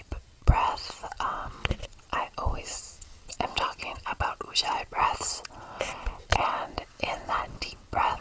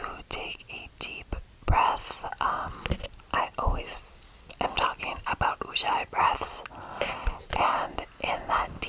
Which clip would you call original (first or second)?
second